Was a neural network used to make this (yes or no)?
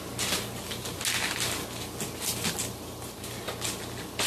no